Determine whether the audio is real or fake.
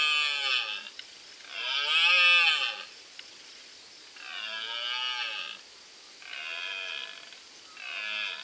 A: real